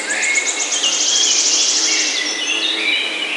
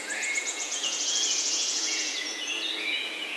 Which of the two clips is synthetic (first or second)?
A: second